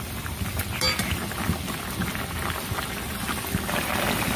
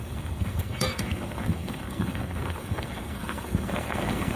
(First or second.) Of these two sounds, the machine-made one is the second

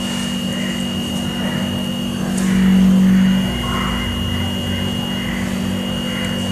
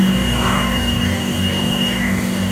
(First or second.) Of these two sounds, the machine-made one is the second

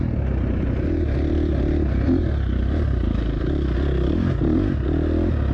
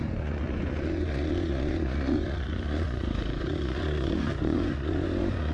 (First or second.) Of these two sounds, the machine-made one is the second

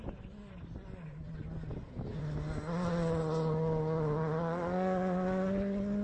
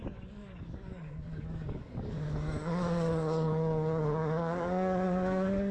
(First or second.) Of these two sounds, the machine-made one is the second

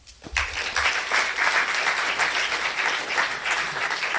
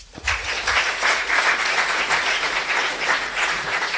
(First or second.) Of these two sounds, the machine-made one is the second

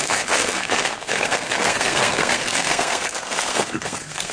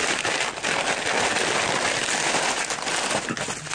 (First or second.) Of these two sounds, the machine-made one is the first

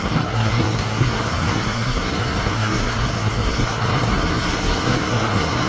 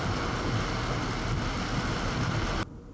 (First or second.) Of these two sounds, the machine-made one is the first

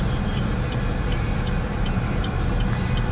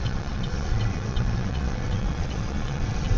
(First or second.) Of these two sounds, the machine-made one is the second